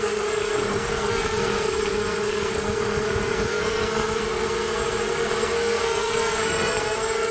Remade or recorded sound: remade